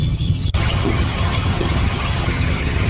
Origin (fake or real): fake